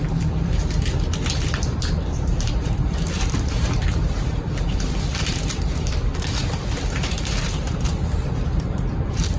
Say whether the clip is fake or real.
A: fake